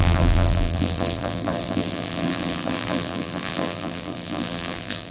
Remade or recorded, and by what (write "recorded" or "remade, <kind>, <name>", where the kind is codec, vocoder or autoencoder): remade, vocoder, BigVGAN v2